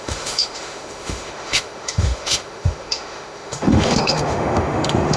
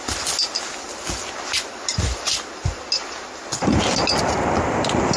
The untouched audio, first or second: second